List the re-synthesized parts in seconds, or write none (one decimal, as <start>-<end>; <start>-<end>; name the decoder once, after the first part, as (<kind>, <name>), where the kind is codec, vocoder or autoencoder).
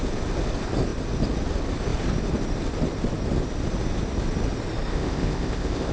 4.9-5.9 (codec, ZipCodec)